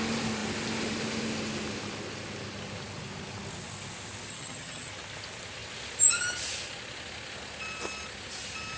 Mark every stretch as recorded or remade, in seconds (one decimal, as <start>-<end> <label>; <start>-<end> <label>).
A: 0.0-4.3 recorded; 4.3-4.9 remade; 4.9-8.8 recorded